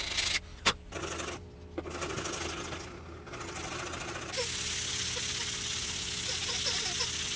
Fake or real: real